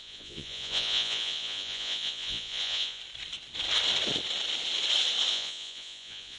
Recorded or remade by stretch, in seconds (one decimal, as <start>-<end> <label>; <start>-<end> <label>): 0.0-3.0 remade; 3.0-5.3 recorded; 5.3-6.4 remade